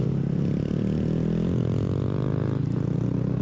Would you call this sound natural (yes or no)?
yes